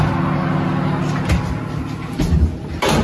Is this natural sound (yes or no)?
yes